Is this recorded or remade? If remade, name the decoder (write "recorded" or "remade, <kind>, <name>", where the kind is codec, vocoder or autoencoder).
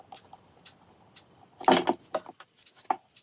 recorded